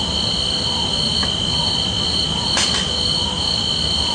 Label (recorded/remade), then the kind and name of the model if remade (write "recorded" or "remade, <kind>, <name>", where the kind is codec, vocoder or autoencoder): recorded